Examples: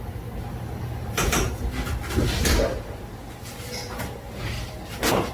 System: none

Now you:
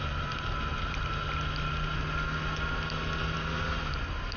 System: none